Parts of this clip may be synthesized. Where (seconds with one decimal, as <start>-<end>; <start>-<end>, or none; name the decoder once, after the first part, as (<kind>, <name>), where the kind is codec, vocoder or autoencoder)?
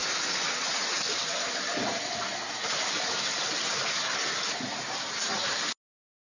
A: 0.0-1.0 (vocoder, Vocos)